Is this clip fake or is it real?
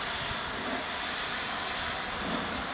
real